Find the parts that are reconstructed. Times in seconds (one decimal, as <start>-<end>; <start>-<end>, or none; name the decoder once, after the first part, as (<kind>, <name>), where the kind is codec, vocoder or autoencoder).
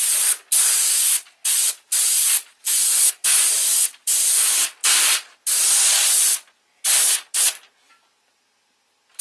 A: none